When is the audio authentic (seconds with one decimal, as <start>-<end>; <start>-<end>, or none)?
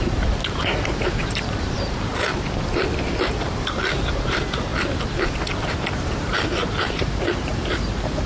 2.1-3.2; 4.7-5.9